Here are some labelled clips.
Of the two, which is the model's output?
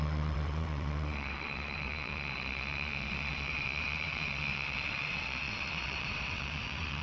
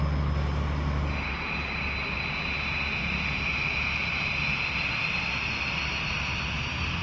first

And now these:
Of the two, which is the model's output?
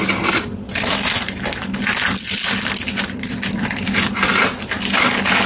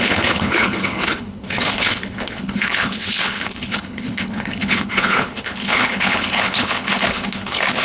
second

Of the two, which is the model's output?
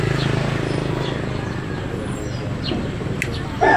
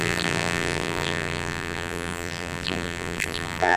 second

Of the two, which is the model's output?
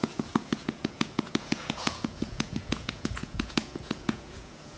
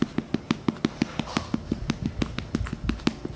first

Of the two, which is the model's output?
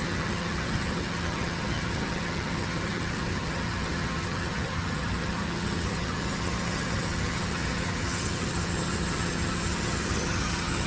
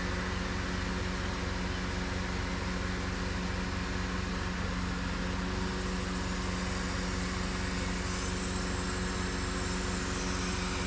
first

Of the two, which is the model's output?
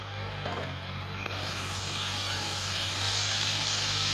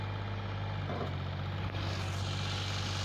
first